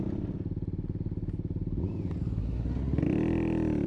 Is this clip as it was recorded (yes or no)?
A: yes